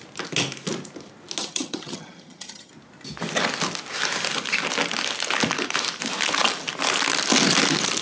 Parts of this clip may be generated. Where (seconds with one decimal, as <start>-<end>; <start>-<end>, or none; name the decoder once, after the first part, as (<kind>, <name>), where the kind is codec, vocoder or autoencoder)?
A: 1.4-2.7 (vocoder, HiFi-GAN)